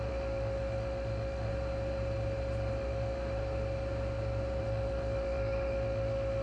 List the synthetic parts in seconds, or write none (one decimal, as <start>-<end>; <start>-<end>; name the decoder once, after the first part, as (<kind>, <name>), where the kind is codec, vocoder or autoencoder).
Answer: 0.0-1.5 (autoencoder, DAC-VAE); 2.7-3.4; 4.6-6.4